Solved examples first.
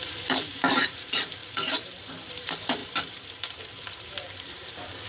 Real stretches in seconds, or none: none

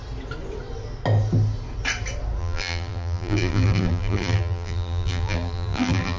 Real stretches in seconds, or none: 0.0-2.4

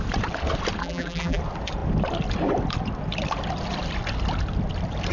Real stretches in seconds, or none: 0.0-0.8; 1.4-5.1

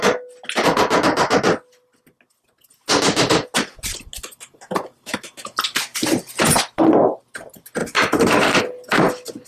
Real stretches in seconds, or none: 0.0-5.9; 6.5-7.8; 8.6-9.5